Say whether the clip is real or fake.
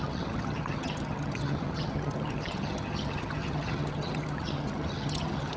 fake